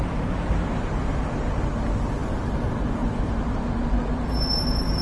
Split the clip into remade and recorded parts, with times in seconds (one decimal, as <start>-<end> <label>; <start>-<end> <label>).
0.0-5.0 remade